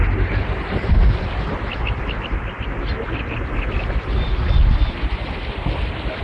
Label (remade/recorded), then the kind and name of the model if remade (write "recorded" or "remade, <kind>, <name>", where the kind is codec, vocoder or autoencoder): recorded